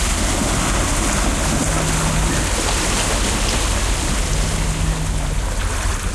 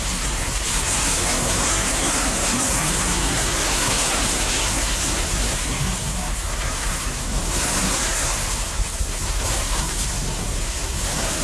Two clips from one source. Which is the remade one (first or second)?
second